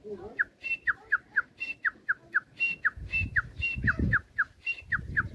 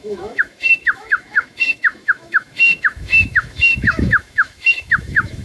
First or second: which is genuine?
first